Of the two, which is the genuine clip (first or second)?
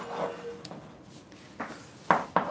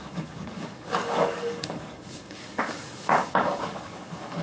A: first